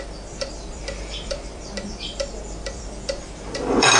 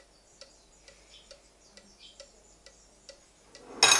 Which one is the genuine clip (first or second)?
second